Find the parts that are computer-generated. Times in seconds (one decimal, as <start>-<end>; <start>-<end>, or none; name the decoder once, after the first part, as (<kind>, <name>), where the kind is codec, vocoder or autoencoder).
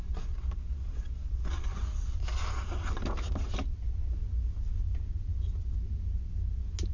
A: none